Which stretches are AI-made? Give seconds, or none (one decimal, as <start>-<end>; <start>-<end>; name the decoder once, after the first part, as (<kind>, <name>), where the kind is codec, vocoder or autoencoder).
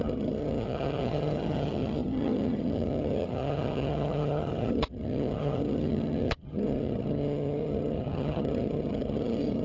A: 0.0-9.6 (vocoder, HiFi-GAN)